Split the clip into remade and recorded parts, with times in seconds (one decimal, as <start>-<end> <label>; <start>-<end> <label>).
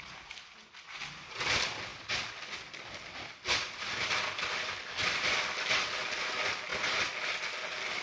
0.0-8.0 recorded